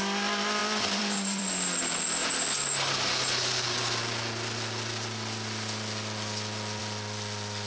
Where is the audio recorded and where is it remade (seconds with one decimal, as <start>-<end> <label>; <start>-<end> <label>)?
0.0-0.6 recorded; 0.6-1.5 remade; 1.5-7.7 recorded

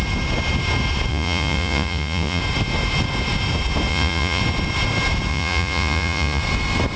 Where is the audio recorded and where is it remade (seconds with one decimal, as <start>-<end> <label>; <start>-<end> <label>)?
0.0-1.1 recorded; 1.1-2.4 remade; 2.4-3.9 recorded; 3.9-4.4 remade; 4.4-5.3 recorded; 5.3-6.4 remade; 6.4-7.0 recorded

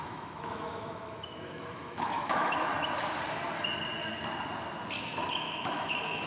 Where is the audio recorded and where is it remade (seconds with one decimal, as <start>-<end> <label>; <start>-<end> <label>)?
0.0-2.7 remade; 2.7-5.0 recorded; 5.0-6.3 remade

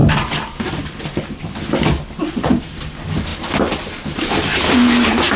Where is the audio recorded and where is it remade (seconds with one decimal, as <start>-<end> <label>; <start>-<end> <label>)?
0.0-2.6 remade; 2.6-5.4 recorded

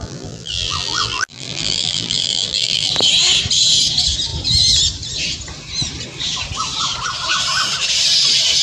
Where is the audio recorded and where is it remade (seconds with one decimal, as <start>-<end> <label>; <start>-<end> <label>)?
0.0-2.9 remade; 2.9-8.6 recorded

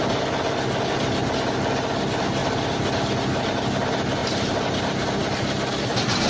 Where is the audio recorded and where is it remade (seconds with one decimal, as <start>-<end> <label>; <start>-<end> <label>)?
0.0-4.2 recorded; 4.2-4.8 remade; 4.8-6.3 recorded

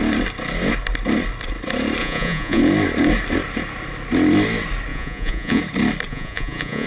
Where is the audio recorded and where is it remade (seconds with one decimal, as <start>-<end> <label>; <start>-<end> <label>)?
0.0-2.0 recorded; 2.0-2.6 remade; 2.6-4.9 recorded; 4.9-5.6 remade; 5.6-6.1 recorded; 6.1-6.9 remade